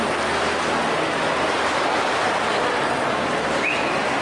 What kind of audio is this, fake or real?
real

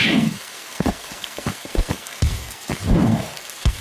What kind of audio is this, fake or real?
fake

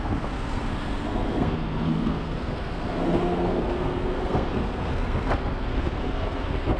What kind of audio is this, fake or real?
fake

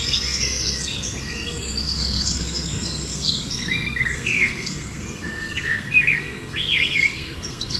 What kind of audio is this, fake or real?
fake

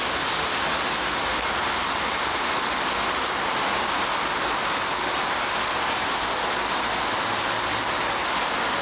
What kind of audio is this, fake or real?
real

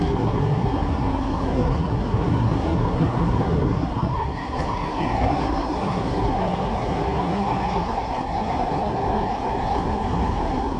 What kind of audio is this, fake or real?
fake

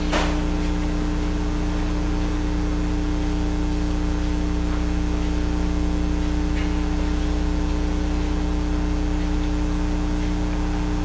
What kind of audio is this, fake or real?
real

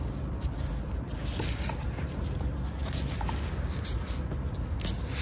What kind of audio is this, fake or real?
real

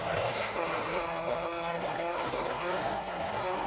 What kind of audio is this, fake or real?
fake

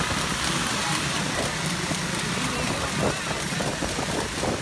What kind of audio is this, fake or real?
real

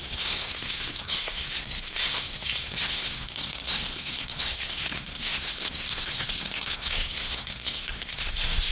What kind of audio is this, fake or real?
fake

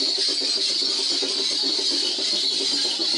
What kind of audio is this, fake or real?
real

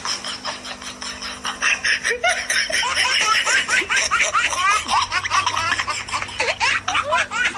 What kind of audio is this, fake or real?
real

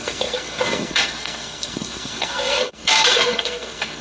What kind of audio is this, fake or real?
fake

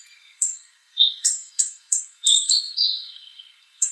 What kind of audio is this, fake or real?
fake